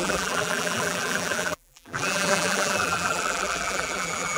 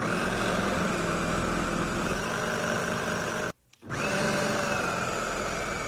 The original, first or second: second